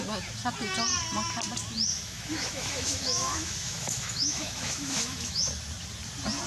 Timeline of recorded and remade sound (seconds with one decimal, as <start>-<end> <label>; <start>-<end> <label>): 0.0-1.9 recorded; 1.9-5.5 remade; 5.5-6.5 recorded